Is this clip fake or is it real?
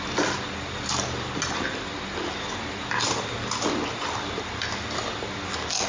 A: real